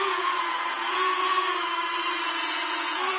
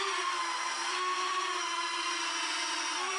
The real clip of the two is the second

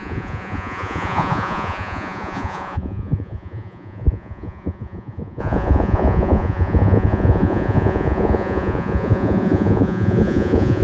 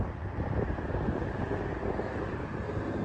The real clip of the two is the second